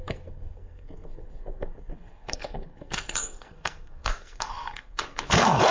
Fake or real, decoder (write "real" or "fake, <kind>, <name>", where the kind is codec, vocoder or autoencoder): fake, codec, SNAC